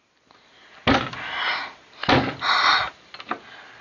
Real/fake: real